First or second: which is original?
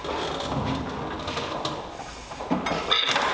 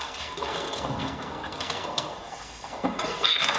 first